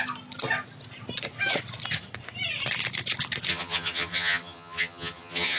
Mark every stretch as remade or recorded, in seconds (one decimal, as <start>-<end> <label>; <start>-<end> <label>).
0.0-3.5 recorded; 3.5-5.6 remade